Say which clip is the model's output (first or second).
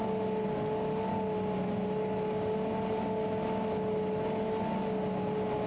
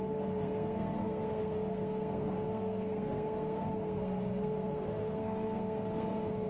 second